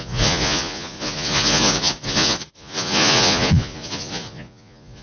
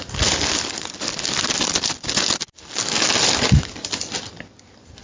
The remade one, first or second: first